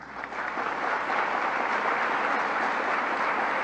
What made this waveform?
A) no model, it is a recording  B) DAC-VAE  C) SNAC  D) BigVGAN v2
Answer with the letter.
A